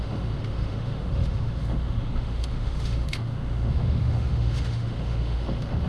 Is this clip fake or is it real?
fake